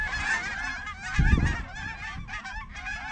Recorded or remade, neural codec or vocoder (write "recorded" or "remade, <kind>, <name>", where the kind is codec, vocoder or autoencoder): recorded